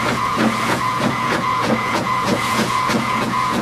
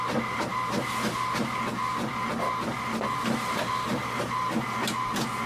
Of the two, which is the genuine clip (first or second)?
second